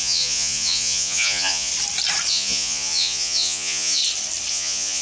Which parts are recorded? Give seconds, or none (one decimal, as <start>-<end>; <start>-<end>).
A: 1.7-2.3; 4.0-4.5